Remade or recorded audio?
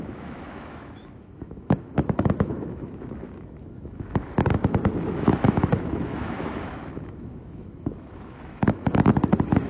remade